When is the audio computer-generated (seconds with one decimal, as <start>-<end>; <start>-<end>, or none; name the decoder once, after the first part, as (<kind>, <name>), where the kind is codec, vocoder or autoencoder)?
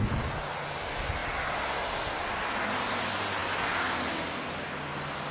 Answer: none